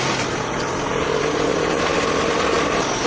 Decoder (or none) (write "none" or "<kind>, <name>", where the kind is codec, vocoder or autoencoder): none